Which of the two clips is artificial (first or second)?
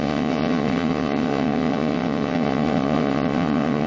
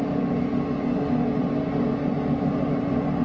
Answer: first